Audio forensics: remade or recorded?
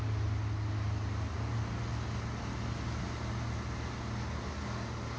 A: recorded